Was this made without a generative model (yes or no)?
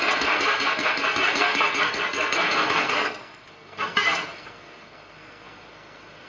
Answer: no